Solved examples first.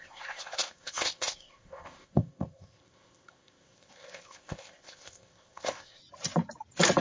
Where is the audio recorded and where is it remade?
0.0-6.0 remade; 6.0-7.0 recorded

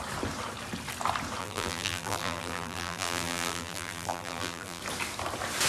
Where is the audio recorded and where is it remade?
0.0-1.4 recorded; 1.4-4.8 remade; 4.8-5.7 recorded

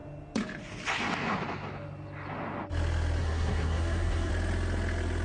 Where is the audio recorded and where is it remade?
0.0-3.2 recorded; 3.2-4.3 remade; 4.3-5.2 recorded

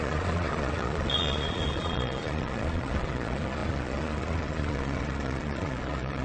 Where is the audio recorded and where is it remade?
0.0-6.2 remade